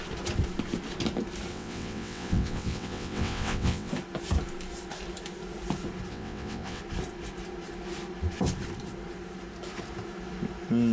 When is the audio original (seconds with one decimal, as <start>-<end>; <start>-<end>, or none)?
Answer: 0.0-1.5; 3.9-6.1; 6.8-10.9